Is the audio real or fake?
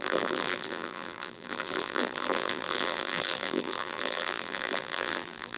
fake